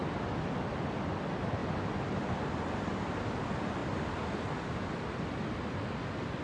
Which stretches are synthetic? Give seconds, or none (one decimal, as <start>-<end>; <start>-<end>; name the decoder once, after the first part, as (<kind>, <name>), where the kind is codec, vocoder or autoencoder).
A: none